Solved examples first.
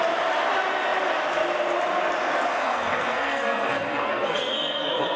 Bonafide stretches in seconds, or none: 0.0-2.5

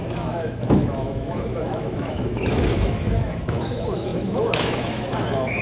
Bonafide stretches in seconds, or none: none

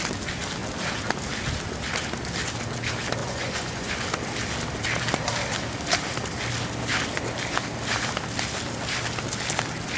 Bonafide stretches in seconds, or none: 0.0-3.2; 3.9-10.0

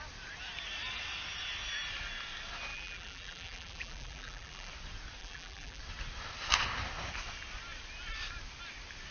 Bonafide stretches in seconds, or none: 0.0-2.7; 4.7-5.2; 5.8-9.1